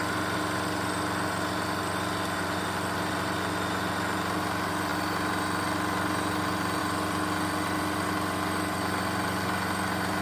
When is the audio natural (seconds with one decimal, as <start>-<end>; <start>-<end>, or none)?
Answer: 0.0-10.2

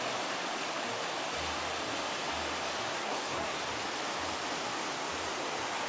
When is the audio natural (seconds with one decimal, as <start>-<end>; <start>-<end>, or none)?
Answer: 0.0-2.9; 3.6-5.9

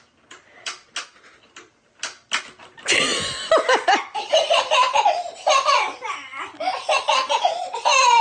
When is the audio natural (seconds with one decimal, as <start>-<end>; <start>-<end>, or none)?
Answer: 0.0-8.2

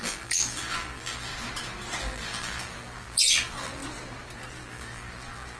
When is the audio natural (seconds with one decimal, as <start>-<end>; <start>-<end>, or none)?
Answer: 1.3-2.0; 3.8-4.5

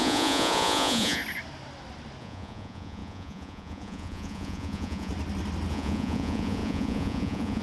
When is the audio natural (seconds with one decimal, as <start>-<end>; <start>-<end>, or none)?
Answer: 1.2-2.2; 5.1-5.7

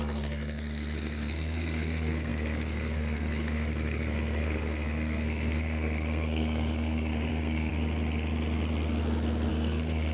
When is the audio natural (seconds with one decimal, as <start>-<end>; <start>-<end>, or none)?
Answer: 7.7-9.5